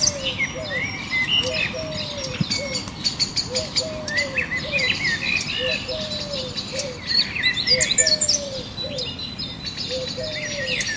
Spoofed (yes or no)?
no